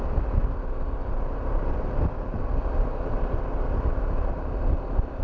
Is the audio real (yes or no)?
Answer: yes